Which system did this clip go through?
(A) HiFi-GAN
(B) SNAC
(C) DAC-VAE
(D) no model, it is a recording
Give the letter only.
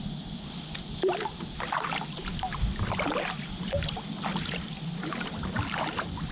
D